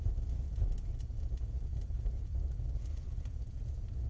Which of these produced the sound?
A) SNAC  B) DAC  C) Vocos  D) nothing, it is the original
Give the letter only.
C